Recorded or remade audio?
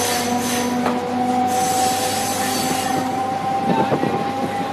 recorded